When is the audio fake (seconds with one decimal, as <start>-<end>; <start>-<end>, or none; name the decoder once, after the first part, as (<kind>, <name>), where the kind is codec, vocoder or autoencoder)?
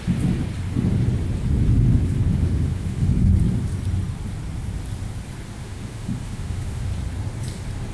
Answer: 2.3-3.3 (autoencoder, DAC-VAE); 5.6-6.9